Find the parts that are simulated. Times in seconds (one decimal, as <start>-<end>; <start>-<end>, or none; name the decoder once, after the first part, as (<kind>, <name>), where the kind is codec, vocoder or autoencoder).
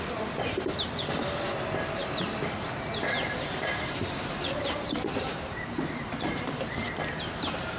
2.0-6.3 (vocoder, BigVGAN v2)